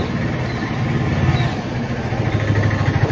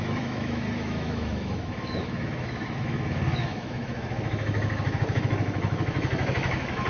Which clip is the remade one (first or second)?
second